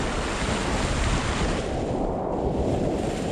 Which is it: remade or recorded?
recorded